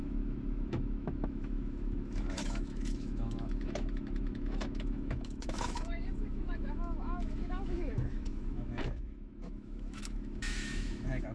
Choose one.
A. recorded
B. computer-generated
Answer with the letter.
B